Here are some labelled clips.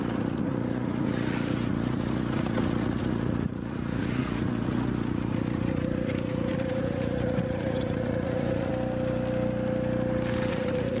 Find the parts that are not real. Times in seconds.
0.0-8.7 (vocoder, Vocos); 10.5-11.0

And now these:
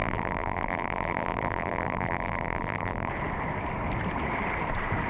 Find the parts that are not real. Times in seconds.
0.0-3.1 (vocoder, BigVGAN v2)